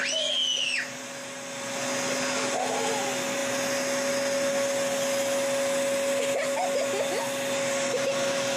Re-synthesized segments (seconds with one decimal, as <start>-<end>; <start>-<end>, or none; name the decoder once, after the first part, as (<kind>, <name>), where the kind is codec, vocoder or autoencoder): none

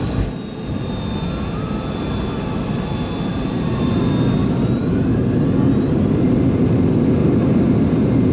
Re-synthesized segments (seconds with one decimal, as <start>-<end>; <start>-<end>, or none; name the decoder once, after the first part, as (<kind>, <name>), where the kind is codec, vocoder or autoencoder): 3.3-4.0 (vocoder, BigVGAN v2); 7.2-7.8

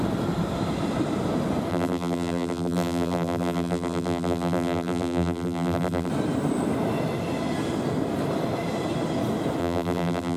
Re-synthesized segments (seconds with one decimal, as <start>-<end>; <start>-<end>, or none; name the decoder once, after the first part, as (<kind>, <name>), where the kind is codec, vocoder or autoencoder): 1.7-6.1 (vocoder, BigVGAN v2); 9.6-10.4

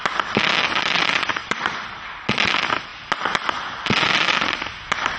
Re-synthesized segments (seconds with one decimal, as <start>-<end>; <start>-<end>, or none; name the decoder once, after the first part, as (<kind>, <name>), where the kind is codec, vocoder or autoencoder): 1.4-1.9 (vocoder, BigVGAN v2)

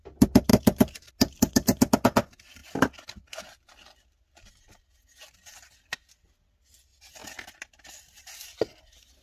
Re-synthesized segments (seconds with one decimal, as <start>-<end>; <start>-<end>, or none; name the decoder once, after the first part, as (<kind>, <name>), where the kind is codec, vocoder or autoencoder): 0.5-1.1 (vocoder, BigVGAN v2)

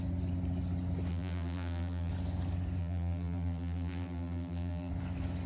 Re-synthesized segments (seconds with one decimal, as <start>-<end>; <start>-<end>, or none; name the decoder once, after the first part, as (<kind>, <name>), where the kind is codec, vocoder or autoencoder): 1.1-2.1 (vocoder, BigVGAN v2); 2.8-4.9

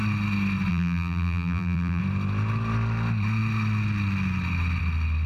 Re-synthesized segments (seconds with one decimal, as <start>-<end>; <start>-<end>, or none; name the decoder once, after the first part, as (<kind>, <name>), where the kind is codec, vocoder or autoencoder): 0.7-2.0 (vocoder, BigVGAN v2)